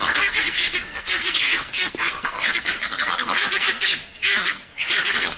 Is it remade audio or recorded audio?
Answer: remade